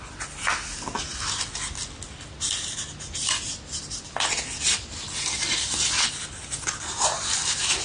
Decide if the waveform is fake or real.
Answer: real